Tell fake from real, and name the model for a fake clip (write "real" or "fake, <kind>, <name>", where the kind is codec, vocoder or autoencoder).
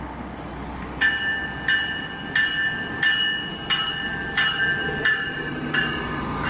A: real